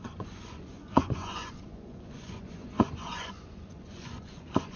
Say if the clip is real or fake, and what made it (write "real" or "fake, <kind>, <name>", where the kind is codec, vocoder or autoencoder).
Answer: fake, vocoder, Vocos